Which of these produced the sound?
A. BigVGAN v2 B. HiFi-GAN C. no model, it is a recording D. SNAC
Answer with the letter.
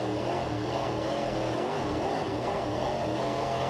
D